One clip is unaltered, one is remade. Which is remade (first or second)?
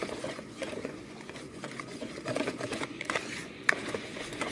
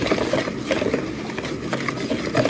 first